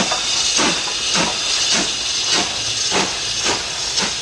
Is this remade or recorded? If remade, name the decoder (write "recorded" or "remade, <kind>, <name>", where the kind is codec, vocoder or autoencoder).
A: recorded